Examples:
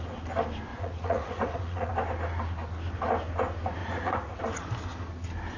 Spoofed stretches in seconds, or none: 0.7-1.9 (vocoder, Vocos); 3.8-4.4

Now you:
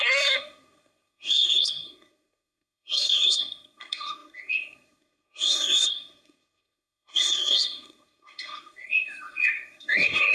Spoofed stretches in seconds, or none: 0.0-10.3 (codec, SNAC)

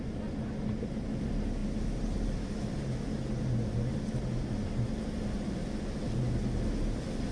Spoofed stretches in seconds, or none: none

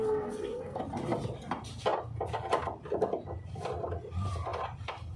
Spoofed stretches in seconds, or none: 0.0-0.8 (codec, SNAC)

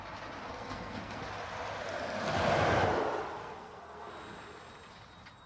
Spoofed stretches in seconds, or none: 0.5-1.2 (codec, SNAC); 3.4-4.1

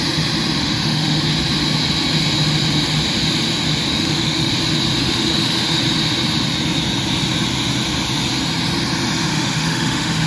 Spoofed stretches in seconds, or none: 0.6-1.2 (autoencoder, DAC-VAE); 3.9-4.5; 5.0-5.8; 9.3-10.3

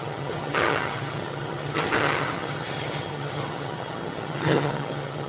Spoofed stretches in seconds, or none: 0.0-5.3 (vocoder, HiFi-GAN)